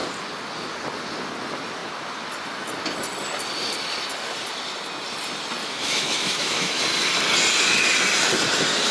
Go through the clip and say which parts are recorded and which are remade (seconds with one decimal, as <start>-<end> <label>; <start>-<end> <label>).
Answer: 0.0-5.6 recorded; 5.6-6.8 remade; 6.8-8.9 recorded